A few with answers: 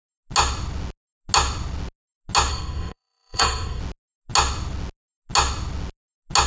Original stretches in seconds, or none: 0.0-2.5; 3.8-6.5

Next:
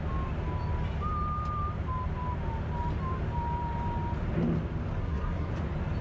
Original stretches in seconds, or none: 0.0-5.0; 5.5-6.0

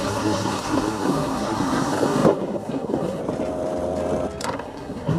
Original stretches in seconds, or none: 3.2-4.4

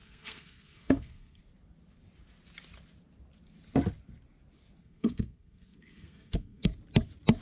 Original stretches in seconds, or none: 1.4-4.8; 6.7-7.4

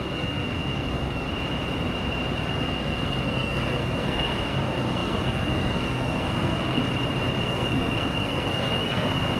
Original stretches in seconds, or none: 1.3-2.5; 6.8-7.4

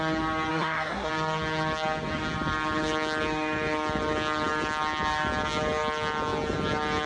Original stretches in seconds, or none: 0.0-0.5; 1.1-7.1